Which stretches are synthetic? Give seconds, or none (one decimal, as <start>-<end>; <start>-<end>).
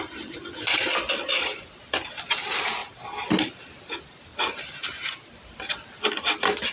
none